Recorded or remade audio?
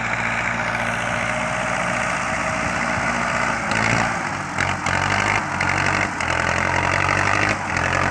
recorded